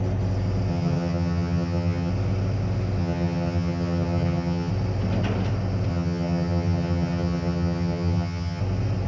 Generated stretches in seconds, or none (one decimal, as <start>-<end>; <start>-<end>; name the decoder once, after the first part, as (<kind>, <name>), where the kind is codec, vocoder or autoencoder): 0.7-2.1 (vocoder, HiFi-GAN); 3.0-4.7; 5.9-8.6